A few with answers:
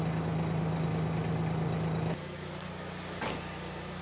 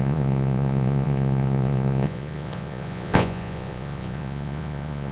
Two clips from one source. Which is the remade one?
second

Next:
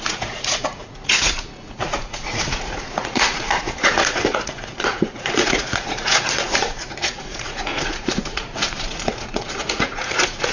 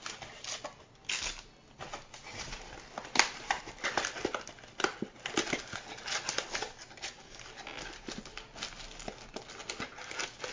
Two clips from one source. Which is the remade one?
first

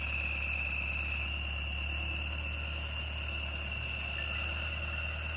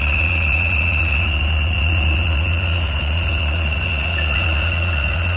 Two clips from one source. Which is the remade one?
second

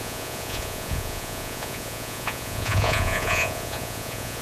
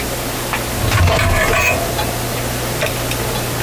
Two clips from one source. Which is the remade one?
first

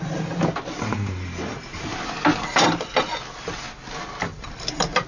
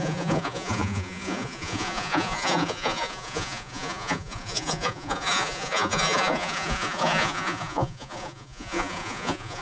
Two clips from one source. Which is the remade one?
second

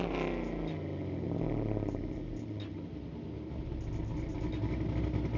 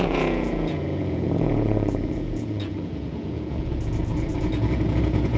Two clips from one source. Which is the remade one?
second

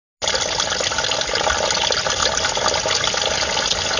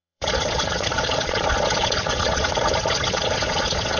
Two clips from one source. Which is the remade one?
second